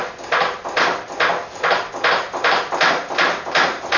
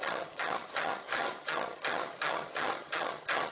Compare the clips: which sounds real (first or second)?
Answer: first